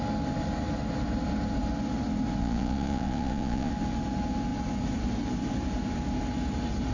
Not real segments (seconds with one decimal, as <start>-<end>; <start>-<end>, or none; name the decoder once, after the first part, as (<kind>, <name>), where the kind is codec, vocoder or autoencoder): 2.4-3.7 (vocoder, Vocos)